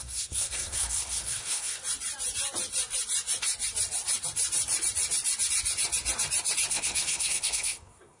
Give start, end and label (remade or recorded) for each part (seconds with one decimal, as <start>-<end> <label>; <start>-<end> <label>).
0.0-1.8 remade; 1.8-6.7 recorded; 6.7-8.2 remade